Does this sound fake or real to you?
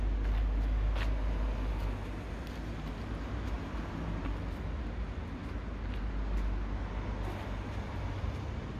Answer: real